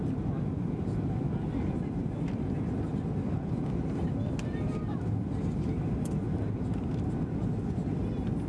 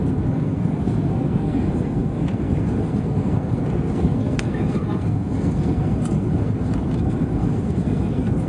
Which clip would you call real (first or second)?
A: first